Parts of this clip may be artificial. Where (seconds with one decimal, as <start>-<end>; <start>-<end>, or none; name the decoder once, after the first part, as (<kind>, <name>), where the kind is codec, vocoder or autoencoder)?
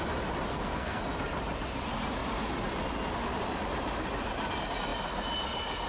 0.5-1.0 (codec, SNAC)